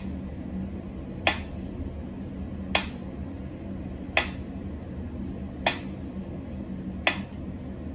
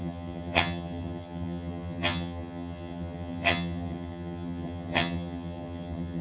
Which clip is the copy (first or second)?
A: second